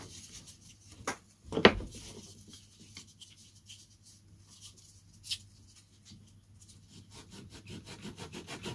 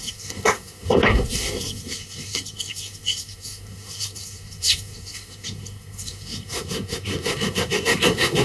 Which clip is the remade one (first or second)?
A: second